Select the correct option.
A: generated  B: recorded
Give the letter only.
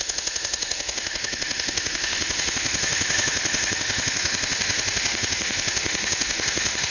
A